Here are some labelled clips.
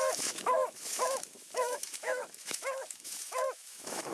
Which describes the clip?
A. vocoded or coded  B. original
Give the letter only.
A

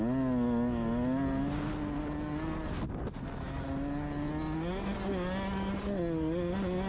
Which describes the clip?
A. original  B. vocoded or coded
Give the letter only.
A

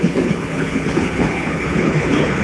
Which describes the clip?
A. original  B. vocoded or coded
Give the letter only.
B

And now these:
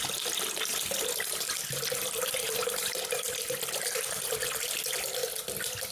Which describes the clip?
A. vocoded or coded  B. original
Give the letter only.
B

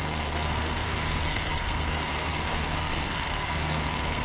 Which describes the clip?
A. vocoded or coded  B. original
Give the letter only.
A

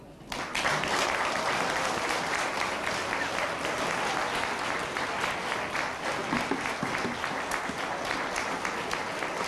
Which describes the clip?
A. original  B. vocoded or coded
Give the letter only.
A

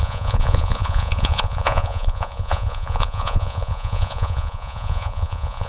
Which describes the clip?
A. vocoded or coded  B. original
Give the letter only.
A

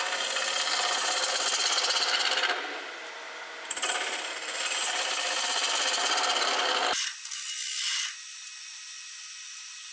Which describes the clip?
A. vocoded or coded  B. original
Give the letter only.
A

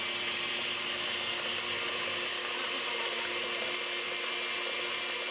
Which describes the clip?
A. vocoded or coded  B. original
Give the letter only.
B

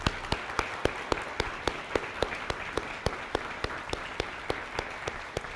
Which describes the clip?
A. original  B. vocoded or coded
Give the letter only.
A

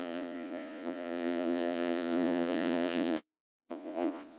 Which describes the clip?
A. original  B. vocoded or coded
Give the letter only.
B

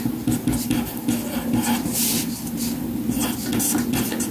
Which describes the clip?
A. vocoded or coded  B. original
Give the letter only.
B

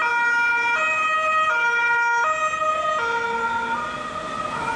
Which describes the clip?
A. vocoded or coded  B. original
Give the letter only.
B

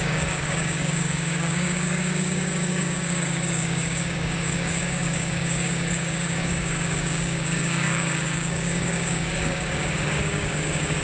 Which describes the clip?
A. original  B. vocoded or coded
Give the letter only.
B